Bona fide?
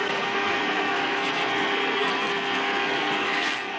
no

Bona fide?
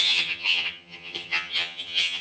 no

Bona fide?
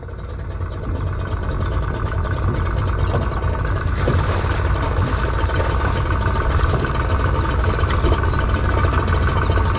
yes